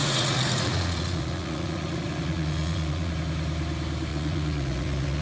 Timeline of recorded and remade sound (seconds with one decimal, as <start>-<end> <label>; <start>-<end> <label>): 0.0-3.1 remade; 3.1-4.1 recorded; 4.1-5.2 remade